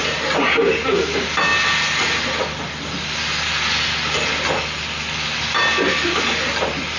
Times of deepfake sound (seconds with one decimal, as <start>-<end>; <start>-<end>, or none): none